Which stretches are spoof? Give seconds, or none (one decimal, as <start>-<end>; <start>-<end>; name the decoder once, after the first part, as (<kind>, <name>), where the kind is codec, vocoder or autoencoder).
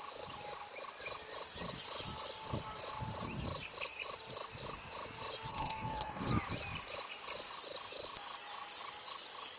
5.5-6.3 (codec, SNAC)